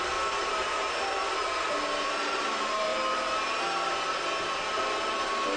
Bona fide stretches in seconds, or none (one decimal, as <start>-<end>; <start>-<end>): 2.9-4.8

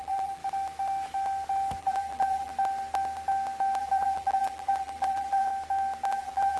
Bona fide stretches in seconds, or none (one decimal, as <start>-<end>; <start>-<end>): 0.4-1.8; 2.5-3.8; 5.5-6.1

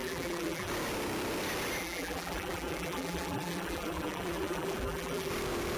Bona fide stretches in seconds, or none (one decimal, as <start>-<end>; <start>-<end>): 0.7-1.8; 5.3-5.8

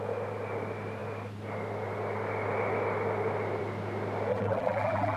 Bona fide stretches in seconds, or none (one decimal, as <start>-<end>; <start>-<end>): 0.0-4.3